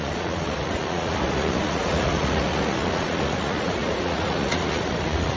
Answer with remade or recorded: remade